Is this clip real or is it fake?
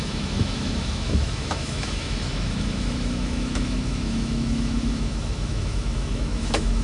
fake